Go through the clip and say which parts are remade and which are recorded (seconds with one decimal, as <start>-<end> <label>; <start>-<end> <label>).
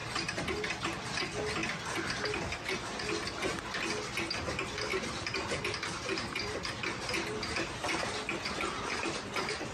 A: 0.0-4.9 recorded; 4.9-8.0 remade; 8.0-9.7 recorded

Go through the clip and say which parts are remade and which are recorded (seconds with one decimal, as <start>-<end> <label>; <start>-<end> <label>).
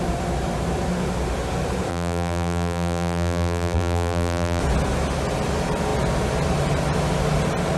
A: 0.0-1.9 recorded; 1.9-4.6 remade; 4.6-7.8 recorded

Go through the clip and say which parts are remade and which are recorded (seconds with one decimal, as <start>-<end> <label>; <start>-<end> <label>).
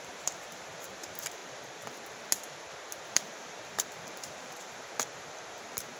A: 0.0-1.4 remade; 1.4-3.0 recorded; 3.0-6.0 remade